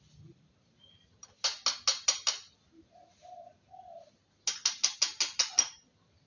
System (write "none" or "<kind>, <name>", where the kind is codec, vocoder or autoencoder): none